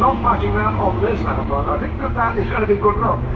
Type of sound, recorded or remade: remade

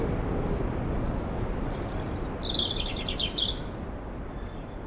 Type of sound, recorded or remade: recorded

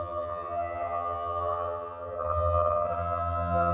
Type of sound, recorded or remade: remade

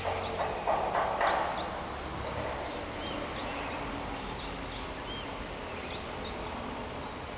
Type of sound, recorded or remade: recorded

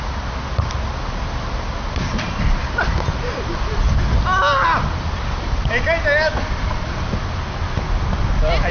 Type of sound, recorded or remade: recorded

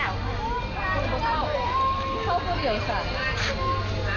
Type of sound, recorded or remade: recorded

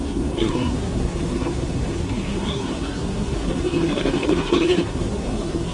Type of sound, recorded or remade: remade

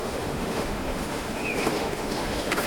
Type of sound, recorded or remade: remade